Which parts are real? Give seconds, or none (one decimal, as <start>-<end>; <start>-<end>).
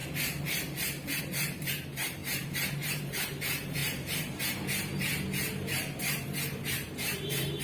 0.0-1.2